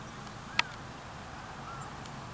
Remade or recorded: recorded